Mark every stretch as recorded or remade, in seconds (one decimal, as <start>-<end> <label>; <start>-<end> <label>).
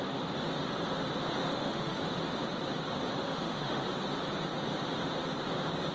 0.0-1.5 recorded; 1.5-2.0 remade; 2.0-3.2 recorded; 3.2-3.8 remade; 3.8-5.9 recorded